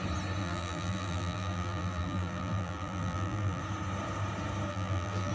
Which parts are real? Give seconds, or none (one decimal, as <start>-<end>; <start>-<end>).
0.0-0.4; 3.6-4.7